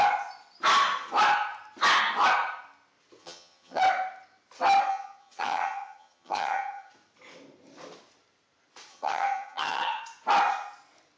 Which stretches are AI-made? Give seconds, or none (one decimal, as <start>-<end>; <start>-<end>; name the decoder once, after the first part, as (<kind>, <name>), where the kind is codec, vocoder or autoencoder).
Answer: 3.2-3.8 (vocoder, HiFi-GAN); 4.9-6.9; 8.9-10.0